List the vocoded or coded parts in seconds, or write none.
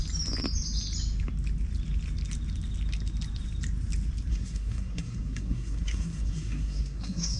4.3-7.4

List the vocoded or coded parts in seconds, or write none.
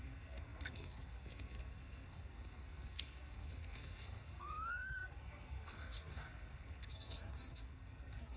0.0-8.4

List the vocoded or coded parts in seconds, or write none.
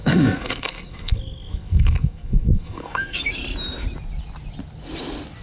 0.0-3.2